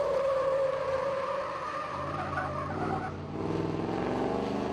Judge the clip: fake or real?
real